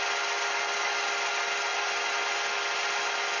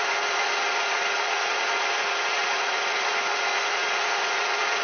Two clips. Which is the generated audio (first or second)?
second